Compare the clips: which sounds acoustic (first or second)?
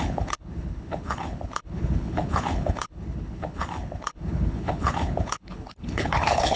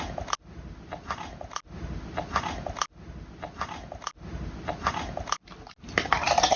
second